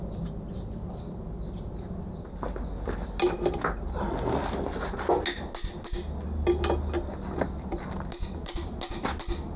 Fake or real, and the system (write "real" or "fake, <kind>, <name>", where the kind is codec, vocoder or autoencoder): real